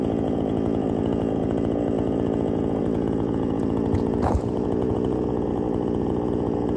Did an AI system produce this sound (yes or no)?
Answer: yes